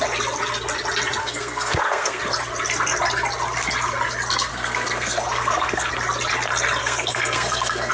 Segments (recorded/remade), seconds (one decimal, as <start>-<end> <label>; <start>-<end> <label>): 0.0-1.2 recorded; 1.2-2.2 remade; 2.2-4.5 recorded; 4.5-5.9 remade; 5.9-6.8 recorded; 6.8-7.9 remade

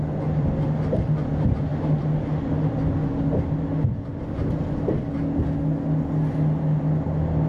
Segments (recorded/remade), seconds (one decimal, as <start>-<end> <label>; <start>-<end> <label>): 0.0-7.5 recorded

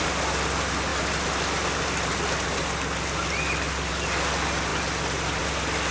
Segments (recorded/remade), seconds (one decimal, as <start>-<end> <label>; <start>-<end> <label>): 0.0-5.9 recorded

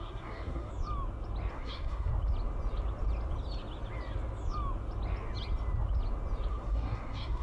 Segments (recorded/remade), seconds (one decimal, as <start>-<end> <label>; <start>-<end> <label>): 0.0-0.7 remade; 0.7-1.5 recorded; 1.5-2.1 remade; 2.1-6.5 recorded; 6.5-7.4 remade